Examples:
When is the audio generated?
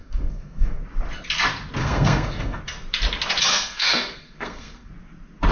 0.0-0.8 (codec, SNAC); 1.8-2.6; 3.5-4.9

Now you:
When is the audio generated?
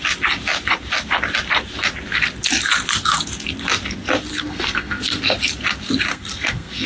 4.3-5.2 (codec, SNAC); 6.1-6.9